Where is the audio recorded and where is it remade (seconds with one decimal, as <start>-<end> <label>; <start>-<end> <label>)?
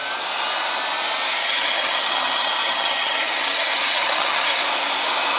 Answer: 0.0-1.4 recorded; 1.4-4.6 remade; 4.6-5.4 recorded